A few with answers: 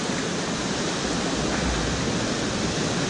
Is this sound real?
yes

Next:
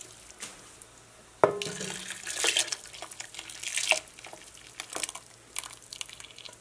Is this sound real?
yes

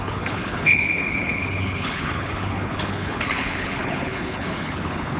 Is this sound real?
no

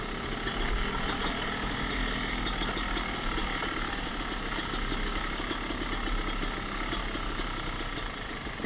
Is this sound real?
yes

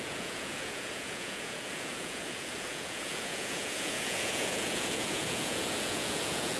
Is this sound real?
no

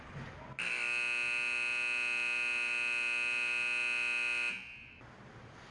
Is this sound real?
yes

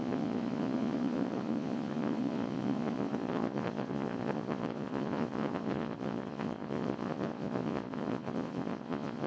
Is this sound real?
no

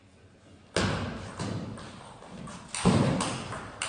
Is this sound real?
yes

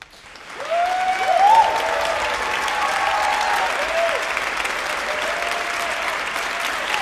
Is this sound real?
yes